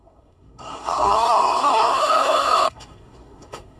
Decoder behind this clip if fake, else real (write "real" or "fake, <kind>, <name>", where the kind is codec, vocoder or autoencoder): fake, codec, SNAC